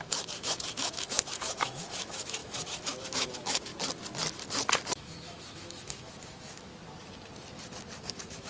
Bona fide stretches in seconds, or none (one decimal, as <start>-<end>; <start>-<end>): 3.7-4.9; 6.7-8.1